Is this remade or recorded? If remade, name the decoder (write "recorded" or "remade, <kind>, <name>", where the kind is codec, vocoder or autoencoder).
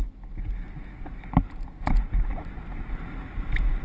recorded